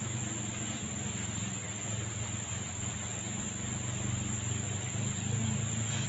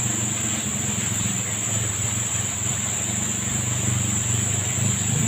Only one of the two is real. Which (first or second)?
first